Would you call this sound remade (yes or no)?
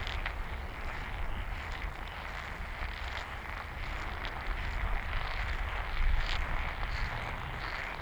no